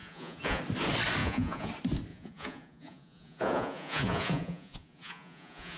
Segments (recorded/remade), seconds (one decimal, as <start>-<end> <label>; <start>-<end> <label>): 0.0-0.6 remade; 0.6-1.2 recorded; 1.2-1.7 remade; 1.7-2.1 recorded; 2.1-5.8 remade

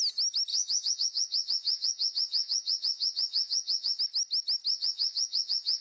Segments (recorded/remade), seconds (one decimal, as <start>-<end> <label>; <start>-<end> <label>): 0.0-0.5 recorded; 0.5-4.0 remade; 4.0-4.7 recorded; 4.7-5.8 remade

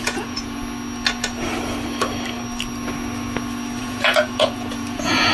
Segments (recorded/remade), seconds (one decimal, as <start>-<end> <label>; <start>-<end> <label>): 0.0-0.6 remade; 0.6-3.8 recorded; 3.8-5.3 remade